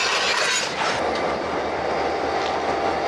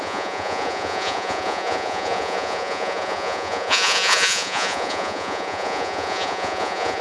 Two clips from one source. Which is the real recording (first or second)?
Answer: first